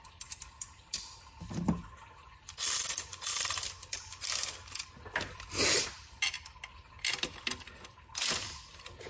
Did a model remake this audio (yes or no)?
no